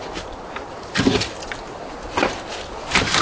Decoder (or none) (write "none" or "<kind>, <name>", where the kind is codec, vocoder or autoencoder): none